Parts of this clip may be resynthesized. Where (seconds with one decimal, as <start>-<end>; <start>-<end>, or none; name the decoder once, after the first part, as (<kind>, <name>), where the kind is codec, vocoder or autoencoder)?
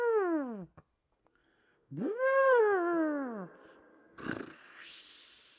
0.9-2.6 (codec, SNAC); 3.9-5.0